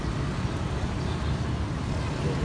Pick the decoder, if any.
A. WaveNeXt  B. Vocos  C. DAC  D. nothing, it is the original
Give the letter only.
D